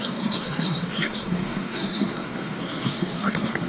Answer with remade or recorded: remade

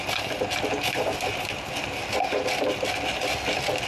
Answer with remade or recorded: recorded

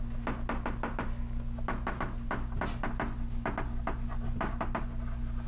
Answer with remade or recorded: recorded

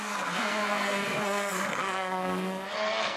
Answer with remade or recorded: remade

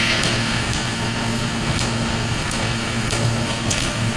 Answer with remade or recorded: remade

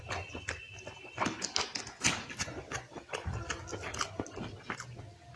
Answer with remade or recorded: recorded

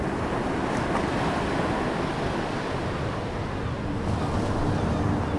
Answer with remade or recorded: recorded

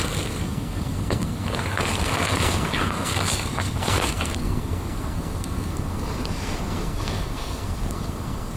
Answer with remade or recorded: remade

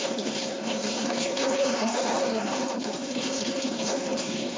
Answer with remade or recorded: remade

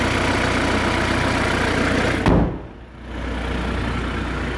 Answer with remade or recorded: recorded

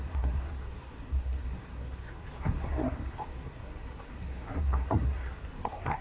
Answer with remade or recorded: remade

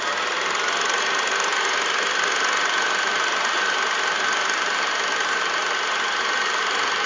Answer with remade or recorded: recorded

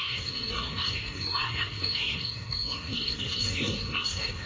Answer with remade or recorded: remade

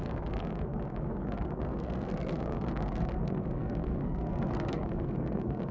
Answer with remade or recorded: remade